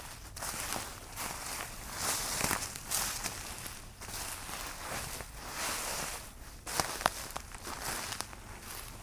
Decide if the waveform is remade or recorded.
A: recorded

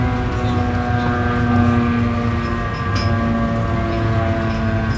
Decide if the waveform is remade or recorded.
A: recorded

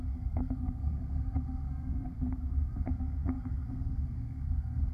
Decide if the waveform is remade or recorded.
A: remade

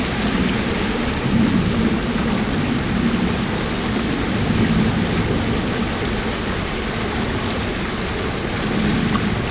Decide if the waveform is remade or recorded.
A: recorded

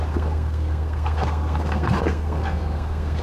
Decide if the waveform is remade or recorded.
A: remade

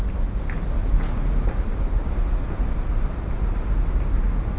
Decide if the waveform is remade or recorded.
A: recorded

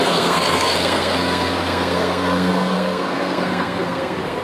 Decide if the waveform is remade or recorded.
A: remade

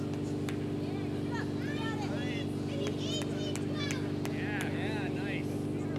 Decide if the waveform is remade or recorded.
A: recorded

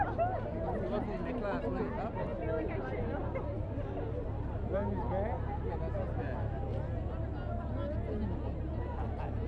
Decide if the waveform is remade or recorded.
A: recorded